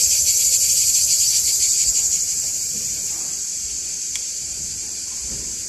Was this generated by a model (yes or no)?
yes